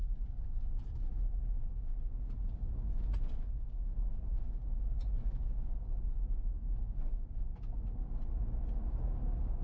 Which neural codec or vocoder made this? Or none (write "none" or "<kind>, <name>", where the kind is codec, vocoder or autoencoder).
none